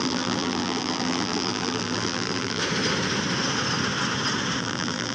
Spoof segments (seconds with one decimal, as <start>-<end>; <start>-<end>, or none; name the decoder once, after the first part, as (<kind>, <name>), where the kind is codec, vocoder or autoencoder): 0.0-2.6 (vocoder, BigVGAN v2); 4.6-5.1